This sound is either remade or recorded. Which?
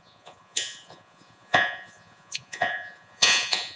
remade